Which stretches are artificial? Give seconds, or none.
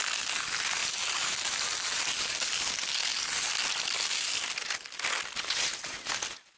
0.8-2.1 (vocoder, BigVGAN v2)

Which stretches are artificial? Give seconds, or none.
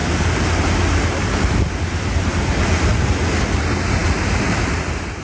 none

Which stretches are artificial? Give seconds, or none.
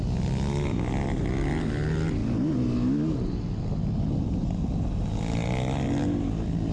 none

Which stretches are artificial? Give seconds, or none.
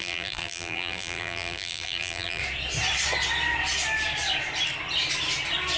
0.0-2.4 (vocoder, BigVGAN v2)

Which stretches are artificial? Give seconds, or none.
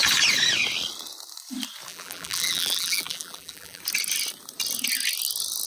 1.9-3.8 (vocoder, BigVGAN v2)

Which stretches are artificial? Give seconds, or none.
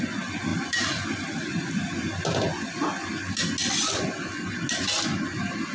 0.5-1.2 (vocoder, BigVGAN v2); 3.6-4.5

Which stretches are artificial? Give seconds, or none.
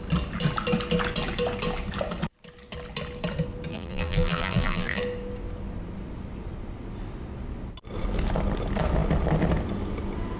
3.7-5.0 (vocoder, BigVGAN v2)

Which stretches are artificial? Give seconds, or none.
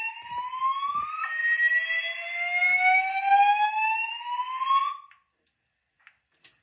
none